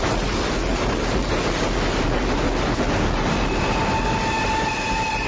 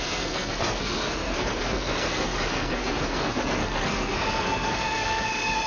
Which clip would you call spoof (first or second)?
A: second